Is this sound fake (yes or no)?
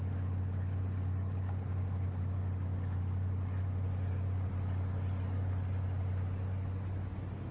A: no